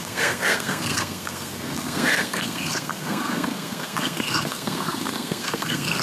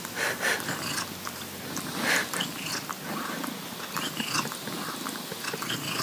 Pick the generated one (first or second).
first